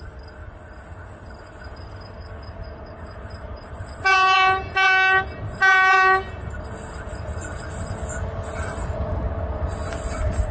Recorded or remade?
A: recorded